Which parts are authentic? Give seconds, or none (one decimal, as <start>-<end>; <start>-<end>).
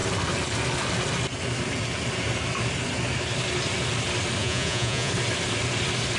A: 0.0-4.4; 5.1-6.2